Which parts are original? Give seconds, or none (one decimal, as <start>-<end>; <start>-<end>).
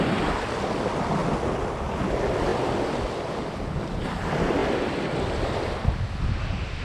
2.5-3.3; 4.6-6.8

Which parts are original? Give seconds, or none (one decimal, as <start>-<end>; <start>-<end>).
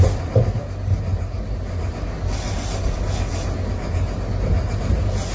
0.0-5.3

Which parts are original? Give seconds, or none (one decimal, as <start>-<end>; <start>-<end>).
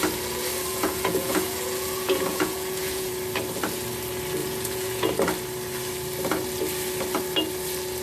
0.0-0.7; 3.1-4.4; 5.1-8.0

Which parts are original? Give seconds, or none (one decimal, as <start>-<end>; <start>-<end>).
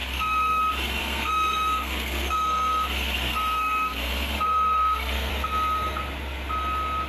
0.6-1.0; 5.3-7.1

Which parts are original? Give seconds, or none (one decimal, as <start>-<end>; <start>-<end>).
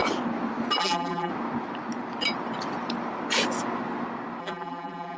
0.0-0.8; 1.3-4.4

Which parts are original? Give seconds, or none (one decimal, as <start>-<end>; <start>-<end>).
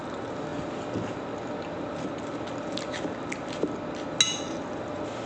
0.0-5.3